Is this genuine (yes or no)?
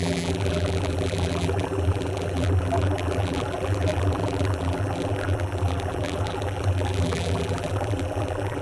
no